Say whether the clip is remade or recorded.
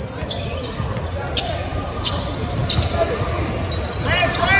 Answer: recorded